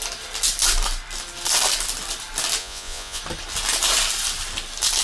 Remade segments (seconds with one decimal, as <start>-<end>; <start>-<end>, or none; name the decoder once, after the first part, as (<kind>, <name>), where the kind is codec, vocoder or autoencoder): 2.6-3.2 (vocoder, Vocos)